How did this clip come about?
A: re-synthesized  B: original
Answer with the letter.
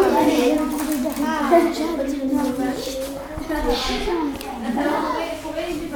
B